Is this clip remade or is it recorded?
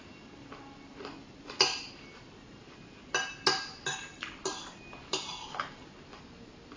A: recorded